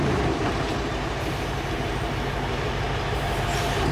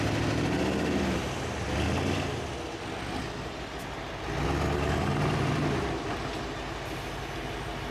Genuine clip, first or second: second